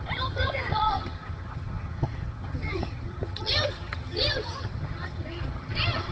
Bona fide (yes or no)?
no